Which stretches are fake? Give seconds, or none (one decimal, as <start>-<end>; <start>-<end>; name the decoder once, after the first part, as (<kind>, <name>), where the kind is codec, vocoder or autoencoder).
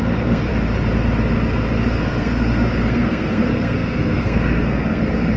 0.0-0.5 (codec, SNAC); 2.0-5.4